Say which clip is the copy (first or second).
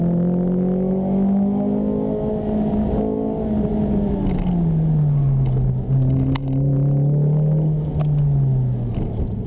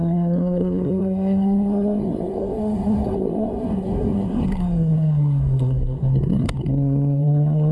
second